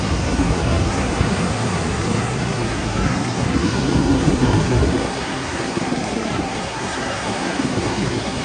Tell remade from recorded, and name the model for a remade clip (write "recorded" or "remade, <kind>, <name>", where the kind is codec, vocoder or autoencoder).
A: remade, codec, SNAC